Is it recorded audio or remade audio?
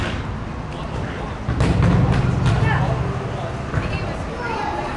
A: recorded